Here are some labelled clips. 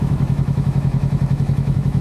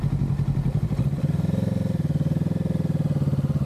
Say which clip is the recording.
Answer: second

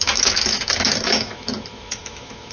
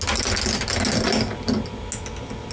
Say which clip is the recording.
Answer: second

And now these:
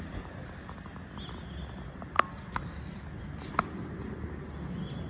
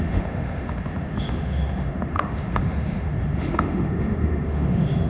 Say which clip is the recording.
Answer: first